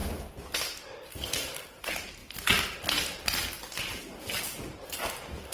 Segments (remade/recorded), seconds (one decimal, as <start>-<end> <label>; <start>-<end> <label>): 0.0-0.6 recorded; 0.6-2.2 remade; 2.2-4.0 recorded; 4.0-5.5 remade